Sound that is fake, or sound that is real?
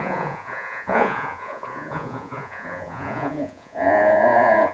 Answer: fake